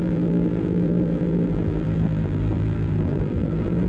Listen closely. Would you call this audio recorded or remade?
remade